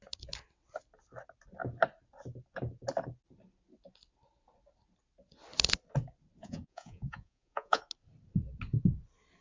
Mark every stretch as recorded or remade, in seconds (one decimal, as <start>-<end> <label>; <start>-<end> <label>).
0.0-6.4 recorded; 6.4-7.8 remade; 7.8-9.4 recorded